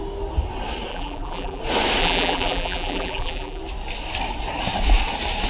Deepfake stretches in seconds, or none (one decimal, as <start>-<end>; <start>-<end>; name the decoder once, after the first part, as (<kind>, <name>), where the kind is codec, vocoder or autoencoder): 0.9-1.6 (vocoder, BigVGAN v2); 2.0-3.6